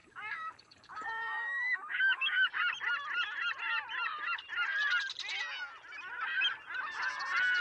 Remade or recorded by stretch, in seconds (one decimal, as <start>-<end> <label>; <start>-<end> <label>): 0.0-2.5 remade; 2.5-7.6 recorded